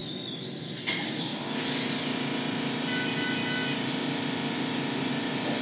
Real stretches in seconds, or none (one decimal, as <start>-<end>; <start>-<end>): 0.0-5.6